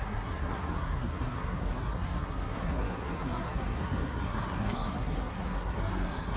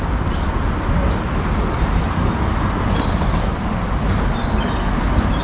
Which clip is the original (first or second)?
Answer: second